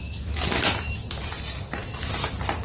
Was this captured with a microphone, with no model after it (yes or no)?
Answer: yes